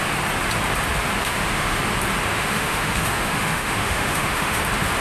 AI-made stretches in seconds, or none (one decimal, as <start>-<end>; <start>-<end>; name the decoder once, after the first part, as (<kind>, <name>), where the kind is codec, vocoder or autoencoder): 1.2-1.8 (autoencoder, DAC-VAE); 2.3-4.6